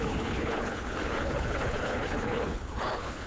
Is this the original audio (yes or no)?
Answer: no